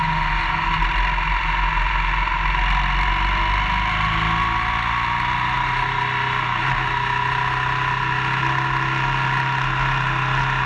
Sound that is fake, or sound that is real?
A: real